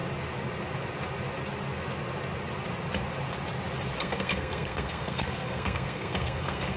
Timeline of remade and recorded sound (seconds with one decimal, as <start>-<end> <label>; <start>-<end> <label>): 0.0-4.0 recorded; 4.0-6.8 remade